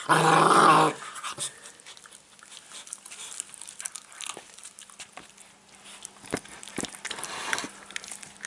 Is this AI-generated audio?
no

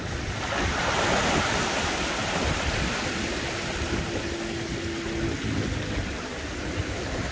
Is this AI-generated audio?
no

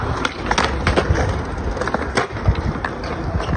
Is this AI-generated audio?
no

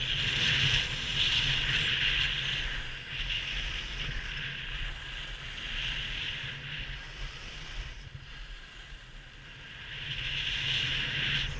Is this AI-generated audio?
no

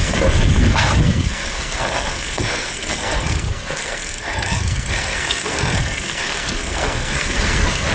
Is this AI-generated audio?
yes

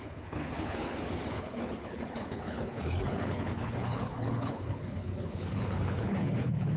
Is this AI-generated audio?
yes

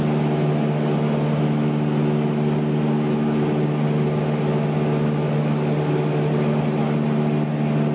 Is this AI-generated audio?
no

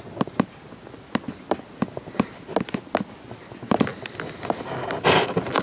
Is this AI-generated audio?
no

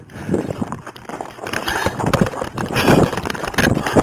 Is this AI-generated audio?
no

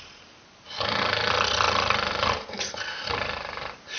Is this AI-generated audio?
no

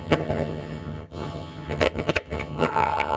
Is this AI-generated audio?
yes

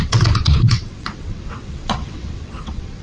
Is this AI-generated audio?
yes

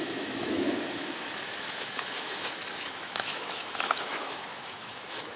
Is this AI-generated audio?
yes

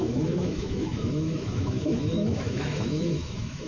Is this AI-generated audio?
yes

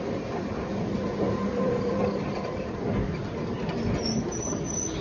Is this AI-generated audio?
no